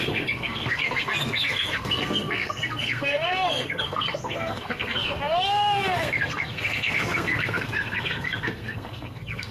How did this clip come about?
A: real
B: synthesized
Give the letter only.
B